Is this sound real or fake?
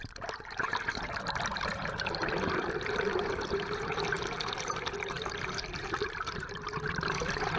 fake